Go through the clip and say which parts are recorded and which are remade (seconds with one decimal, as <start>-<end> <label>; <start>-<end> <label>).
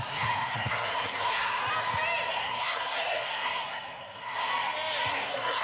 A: 0.0-1.6 remade; 1.6-2.3 recorded; 2.3-4.5 remade; 4.5-5.1 recorded; 5.1-5.6 remade